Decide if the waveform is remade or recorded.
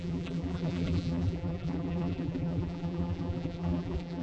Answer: remade